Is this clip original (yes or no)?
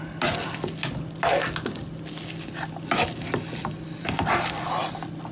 yes